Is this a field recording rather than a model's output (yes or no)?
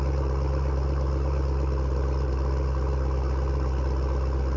yes